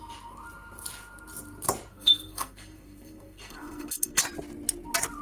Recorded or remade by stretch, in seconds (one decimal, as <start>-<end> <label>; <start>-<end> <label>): 0.0-1.9 recorded; 1.9-4.2 remade; 4.2-5.2 recorded